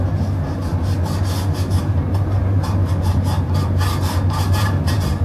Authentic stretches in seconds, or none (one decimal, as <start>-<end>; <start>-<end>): 0.7-1.8